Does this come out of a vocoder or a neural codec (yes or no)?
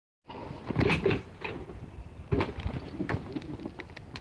no